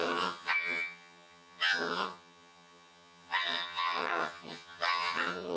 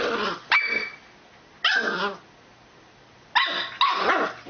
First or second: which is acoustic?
second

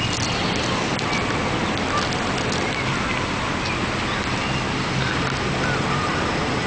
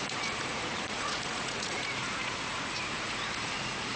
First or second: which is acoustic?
first